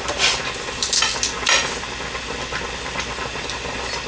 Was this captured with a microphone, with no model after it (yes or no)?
yes